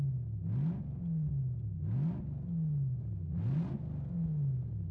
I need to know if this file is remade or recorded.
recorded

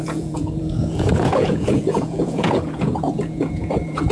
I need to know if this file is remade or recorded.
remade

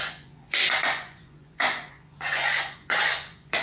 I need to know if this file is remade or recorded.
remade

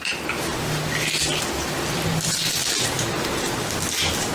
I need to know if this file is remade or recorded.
recorded